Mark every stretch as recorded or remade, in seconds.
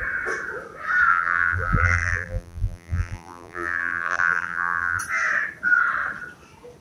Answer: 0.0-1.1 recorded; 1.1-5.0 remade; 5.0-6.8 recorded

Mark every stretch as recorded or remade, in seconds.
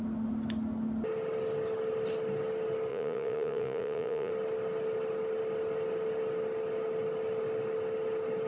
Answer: 0.0-2.9 recorded; 2.9-4.3 remade; 4.3-8.5 recorded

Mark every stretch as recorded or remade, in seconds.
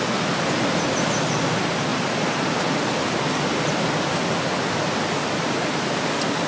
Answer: 0.0-6.5 recorded